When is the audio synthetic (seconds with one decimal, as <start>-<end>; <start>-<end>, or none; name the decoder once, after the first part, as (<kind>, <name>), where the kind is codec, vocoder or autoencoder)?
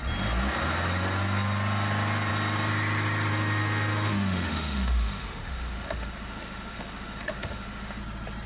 3.3-8.0 (autoencoder, DAC-VAE)